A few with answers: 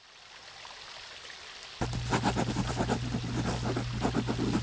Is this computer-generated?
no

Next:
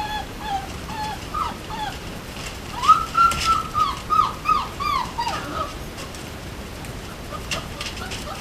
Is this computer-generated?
yes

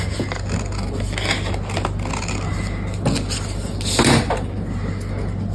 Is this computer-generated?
no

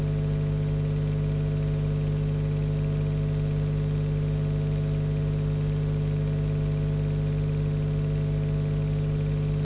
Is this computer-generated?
no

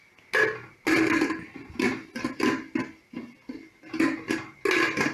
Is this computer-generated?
no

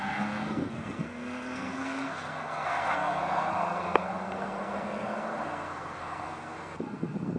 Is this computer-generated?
yes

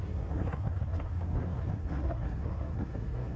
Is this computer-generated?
yes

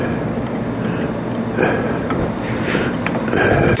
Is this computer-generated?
yes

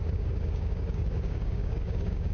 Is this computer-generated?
yes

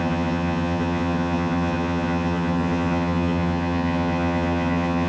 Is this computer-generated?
yes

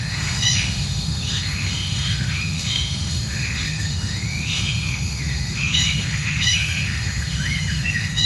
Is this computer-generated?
yes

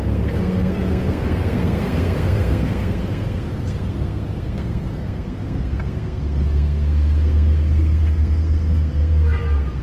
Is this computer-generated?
yes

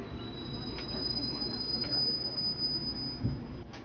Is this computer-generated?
no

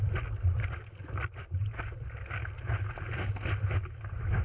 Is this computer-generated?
no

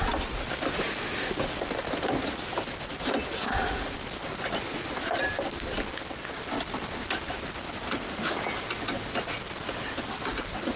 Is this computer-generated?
no